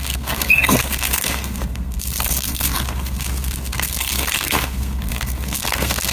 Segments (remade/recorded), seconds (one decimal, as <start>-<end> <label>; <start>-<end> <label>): 0.0-6.1 remade